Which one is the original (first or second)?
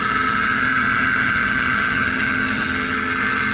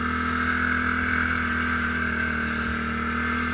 second